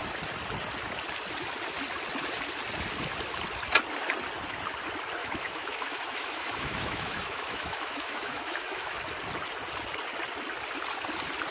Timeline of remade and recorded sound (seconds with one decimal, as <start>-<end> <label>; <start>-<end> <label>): 0.0-5.2 recorded; 5.2-9.0 remade; 9.0-11.5 recorded